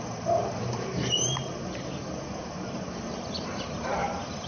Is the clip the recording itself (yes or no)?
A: no